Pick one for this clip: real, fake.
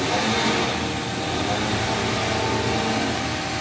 real